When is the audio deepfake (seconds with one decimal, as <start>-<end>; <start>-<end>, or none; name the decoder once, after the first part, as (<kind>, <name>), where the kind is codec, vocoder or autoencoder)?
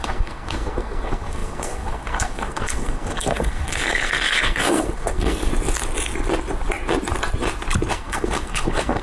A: 0.0-5.5 (codec, SNAC); 7.9-9.0